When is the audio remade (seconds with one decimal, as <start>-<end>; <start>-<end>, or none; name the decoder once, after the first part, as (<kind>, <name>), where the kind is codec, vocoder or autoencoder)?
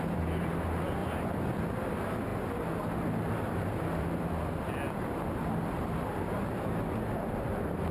1.0-1.6 (vocoder, BigVGAN v2)